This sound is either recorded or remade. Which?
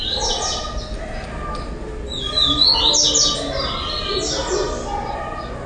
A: recorded